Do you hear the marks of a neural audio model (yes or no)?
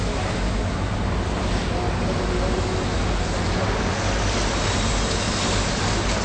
no